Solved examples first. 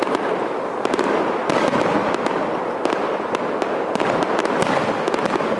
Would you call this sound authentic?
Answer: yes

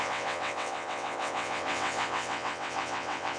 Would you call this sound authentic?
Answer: no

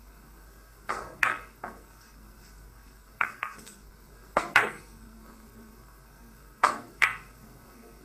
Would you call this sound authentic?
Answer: no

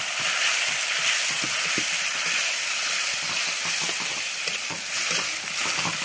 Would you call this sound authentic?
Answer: yes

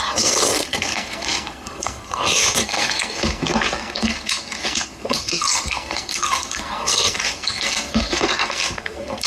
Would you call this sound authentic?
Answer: no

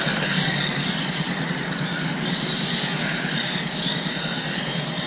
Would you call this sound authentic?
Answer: yes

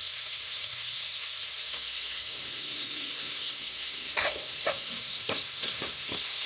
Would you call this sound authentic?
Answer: no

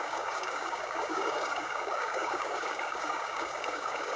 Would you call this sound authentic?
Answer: no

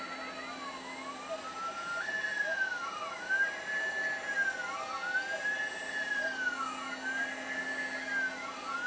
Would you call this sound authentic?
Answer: yes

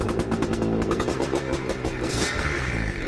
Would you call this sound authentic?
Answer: no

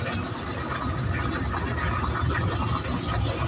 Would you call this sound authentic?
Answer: yes